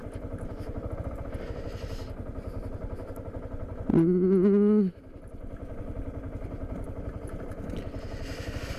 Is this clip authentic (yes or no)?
yes